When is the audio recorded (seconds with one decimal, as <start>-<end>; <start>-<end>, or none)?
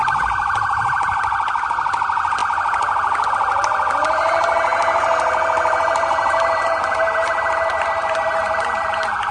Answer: 4.7-5.8